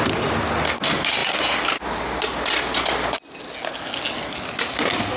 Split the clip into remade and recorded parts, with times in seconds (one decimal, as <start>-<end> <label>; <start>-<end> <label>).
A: 0.0-5.2 recorded